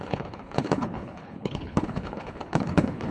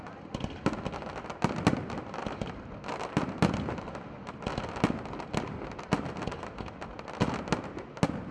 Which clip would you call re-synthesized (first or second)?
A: first